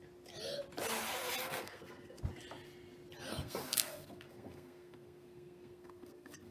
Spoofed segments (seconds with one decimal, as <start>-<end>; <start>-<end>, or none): 1.4-2.2; 3.3-6.5